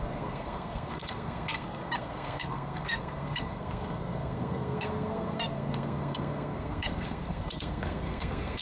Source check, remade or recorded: remade